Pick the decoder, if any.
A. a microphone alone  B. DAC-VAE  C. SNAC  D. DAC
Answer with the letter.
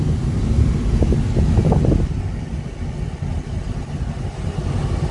A